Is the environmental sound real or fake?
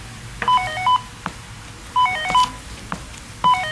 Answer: real